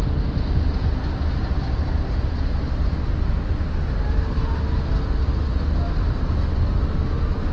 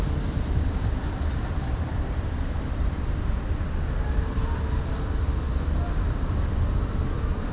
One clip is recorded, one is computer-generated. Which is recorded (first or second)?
first